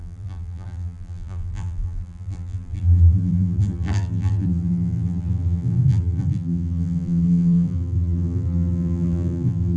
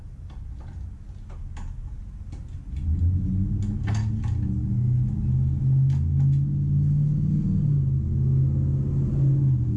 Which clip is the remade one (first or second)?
first